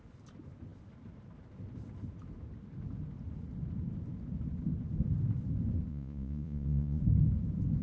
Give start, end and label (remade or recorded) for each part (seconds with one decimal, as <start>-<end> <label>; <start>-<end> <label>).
0.0-5.9 recorded; 5.9-7.0 remade; 7.0-7.8 recorded